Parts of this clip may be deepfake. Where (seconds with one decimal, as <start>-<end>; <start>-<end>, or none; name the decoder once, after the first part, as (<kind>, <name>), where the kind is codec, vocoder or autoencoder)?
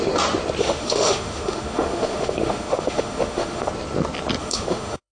0.6-3.7 (autoencoder, DAC-VAE); 4.4-5.1